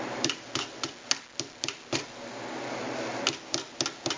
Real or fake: real